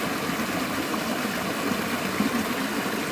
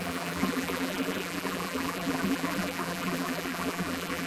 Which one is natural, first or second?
first